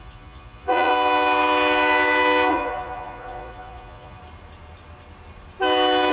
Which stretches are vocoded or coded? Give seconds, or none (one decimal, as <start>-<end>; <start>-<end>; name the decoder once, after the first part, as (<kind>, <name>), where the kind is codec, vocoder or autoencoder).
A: 0.0-0.9 (vocoder, Vocos); 2.5-4.2